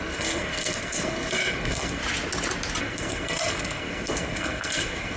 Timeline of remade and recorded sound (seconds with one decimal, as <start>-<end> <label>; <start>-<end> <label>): 0.0-2.0 remade; 2.0-2.8 recorded; 2.8-5.2 remade